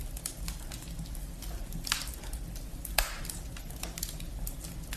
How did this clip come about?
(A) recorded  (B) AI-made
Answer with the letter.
A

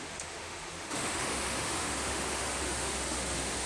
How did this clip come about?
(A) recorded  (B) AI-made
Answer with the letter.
B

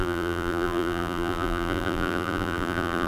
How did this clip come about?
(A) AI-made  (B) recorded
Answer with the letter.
A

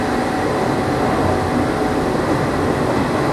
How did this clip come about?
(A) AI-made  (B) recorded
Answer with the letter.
B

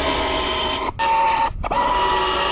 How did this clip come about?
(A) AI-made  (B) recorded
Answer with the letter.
B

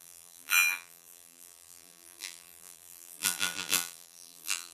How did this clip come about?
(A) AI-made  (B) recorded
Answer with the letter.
A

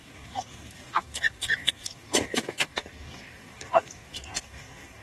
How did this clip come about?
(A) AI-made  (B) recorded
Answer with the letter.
A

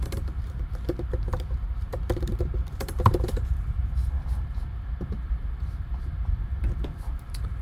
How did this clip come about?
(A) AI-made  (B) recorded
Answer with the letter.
A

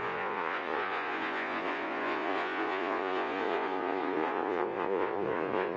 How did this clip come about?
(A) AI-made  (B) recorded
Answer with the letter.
A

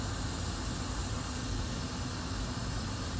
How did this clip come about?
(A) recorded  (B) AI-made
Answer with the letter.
A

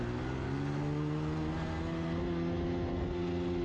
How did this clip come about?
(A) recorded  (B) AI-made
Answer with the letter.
A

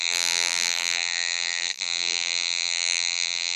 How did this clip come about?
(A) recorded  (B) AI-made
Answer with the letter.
B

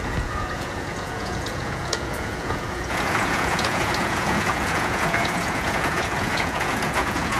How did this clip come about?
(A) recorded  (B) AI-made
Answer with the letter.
B